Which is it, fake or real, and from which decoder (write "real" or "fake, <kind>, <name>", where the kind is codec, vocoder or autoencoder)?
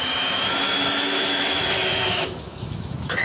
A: fake, autoencoder, DAC-VAE